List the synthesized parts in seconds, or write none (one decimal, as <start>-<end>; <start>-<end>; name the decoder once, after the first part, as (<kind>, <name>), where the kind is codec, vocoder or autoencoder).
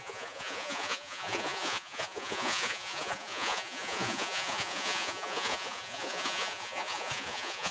0.0-7.7 (vocoder, Vocos)